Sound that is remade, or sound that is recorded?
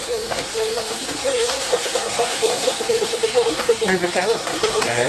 remade